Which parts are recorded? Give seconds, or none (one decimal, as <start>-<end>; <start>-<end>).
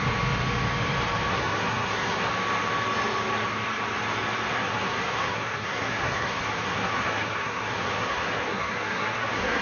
0.0-1.3; 2.3-4.5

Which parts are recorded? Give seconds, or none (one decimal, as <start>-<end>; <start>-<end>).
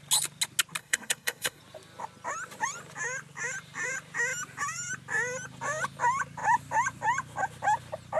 0.0-0.8; 1.6-8.2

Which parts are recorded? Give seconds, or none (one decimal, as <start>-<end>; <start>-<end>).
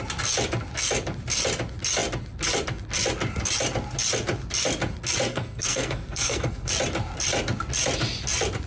0.0-5.3; 6.7-8.7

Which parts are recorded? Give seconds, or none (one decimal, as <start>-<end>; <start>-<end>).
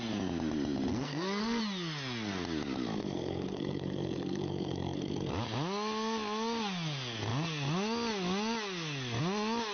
0.0-0.9; 1.6-3.0; 5.3-9.7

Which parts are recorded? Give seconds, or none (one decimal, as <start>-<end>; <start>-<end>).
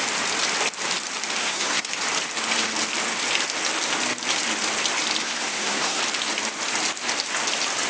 0.0-1.4; 1.9-5.2; 6.0-7.9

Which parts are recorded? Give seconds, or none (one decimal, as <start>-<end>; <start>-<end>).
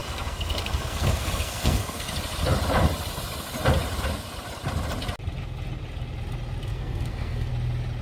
2.1-6.7; 7.5-8.0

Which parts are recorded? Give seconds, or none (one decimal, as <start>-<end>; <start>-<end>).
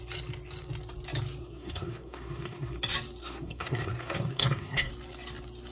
0.0-1.4; 2.8-3.2; 4.9-5.7